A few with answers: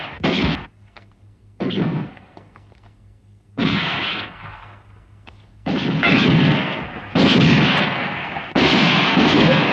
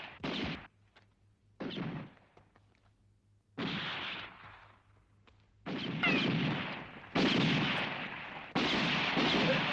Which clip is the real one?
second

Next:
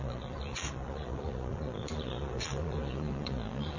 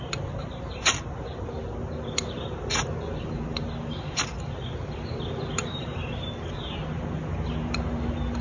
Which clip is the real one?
second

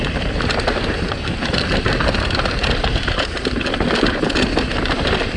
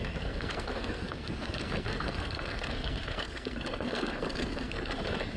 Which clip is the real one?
first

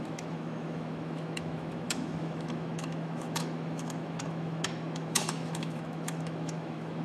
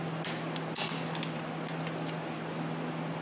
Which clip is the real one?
second